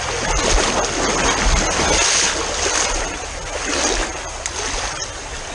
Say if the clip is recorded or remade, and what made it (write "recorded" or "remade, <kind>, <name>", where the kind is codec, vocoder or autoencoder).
recorded